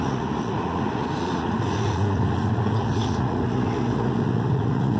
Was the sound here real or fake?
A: fake